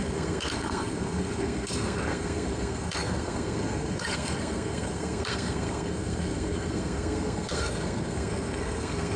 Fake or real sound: fake